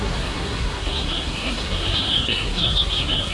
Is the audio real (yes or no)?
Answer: no